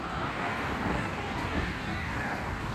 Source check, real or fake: fake